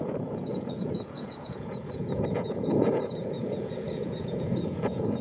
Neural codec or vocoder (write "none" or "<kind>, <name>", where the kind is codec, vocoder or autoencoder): vocoder, Vocos